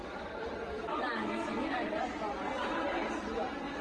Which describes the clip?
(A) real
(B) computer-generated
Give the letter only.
A